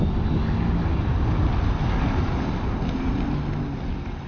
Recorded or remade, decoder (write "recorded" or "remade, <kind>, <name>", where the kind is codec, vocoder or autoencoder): recorded